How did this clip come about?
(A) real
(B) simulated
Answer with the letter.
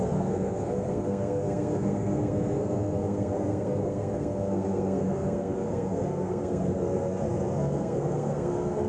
B